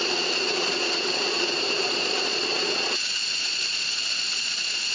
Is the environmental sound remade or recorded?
remade